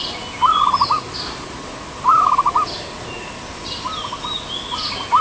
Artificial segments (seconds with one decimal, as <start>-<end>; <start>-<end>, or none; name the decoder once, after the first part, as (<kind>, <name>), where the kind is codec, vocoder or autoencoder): none